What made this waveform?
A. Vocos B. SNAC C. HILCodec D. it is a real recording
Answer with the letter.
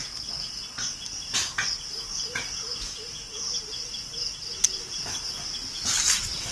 D